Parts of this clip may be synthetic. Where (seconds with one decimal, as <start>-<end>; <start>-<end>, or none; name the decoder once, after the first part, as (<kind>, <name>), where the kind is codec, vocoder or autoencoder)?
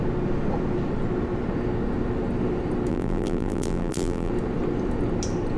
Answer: 2.9-4.3 (vocoder, BigVGAN v2)